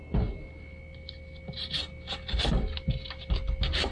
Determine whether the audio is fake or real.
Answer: real